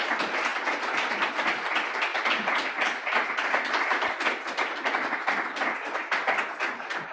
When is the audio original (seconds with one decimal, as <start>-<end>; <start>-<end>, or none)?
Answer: 0.0-7.1